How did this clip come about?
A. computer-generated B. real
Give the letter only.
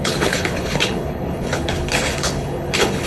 A